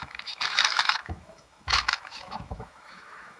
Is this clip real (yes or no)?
no